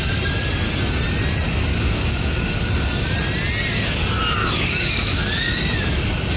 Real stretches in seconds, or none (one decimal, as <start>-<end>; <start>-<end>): 0.0-1.7; 2.7-4.4; 5.6-6.4